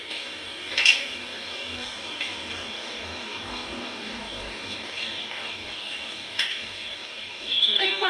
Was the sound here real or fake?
fake